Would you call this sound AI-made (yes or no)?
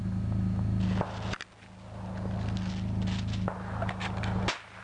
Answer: no